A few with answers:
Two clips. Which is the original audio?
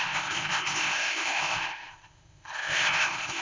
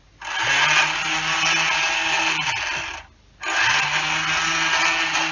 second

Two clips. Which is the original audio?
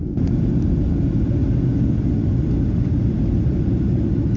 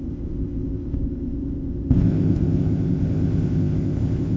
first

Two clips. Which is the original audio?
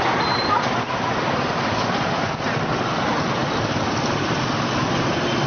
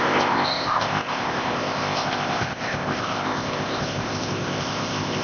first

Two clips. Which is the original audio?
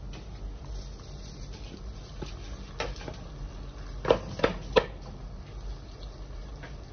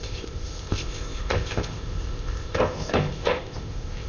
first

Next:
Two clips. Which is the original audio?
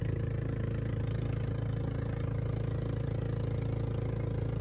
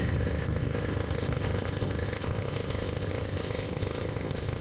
first